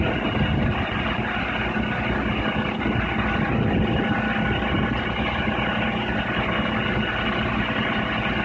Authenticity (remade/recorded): recorded